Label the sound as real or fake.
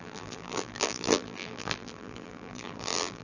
fake